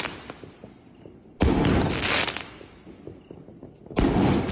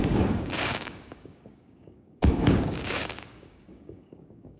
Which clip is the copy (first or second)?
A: second